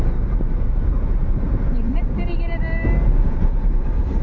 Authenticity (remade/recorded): remade